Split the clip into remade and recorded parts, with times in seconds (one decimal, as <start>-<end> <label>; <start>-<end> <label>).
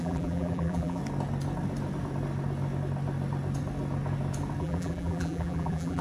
0.0-1.0 remade; 1.0-4.6 recorded; 4.6-6.0 remade